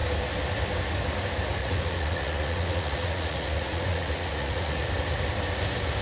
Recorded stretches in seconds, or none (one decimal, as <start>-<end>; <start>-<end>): 0.0-1.6; 4.9-6.0